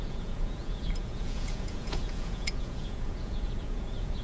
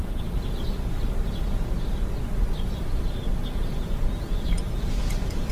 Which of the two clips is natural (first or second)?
second